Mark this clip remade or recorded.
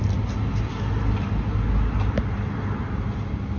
recorded